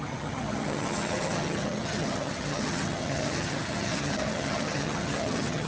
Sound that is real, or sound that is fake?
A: fake